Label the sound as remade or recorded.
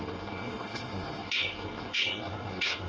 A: remade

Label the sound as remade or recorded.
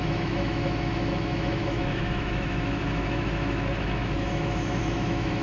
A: remade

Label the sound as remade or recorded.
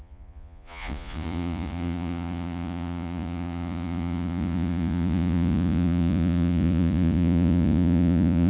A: remade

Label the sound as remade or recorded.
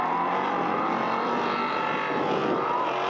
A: recorded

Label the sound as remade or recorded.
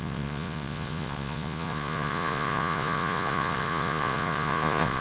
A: remade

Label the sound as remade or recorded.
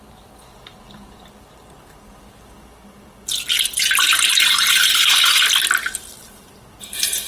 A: recorded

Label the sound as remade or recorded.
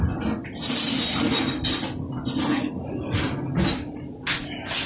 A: recorded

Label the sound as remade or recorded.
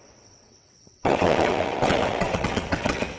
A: remade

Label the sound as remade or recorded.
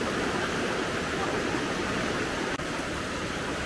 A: remade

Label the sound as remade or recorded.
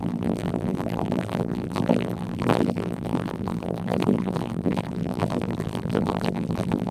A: remade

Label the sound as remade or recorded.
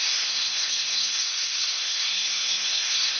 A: remade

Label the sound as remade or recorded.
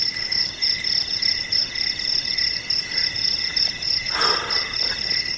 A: recorded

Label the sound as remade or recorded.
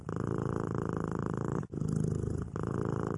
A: remade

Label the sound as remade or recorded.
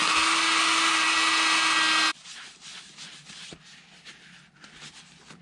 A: recorded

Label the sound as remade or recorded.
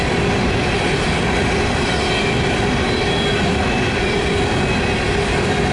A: recorded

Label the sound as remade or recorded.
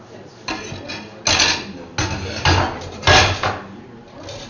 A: recorded